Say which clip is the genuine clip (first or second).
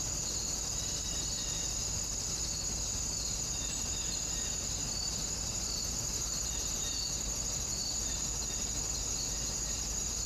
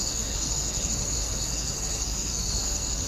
first